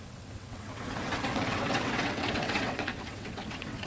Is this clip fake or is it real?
fake